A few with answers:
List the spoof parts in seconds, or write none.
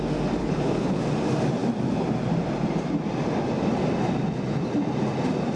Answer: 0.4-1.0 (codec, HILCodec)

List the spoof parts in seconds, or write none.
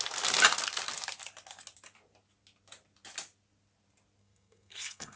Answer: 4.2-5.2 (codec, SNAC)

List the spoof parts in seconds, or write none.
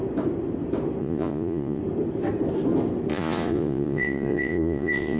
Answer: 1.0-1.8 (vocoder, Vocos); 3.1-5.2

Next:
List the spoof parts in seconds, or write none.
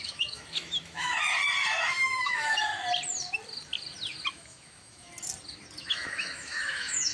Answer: 0.0-1.1 (autoencoder, DAC-VAE); 1.9-2.7; 4.3-5.1; 5.8-7.1